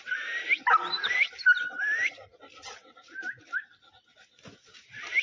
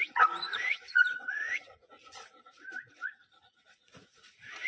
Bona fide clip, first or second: first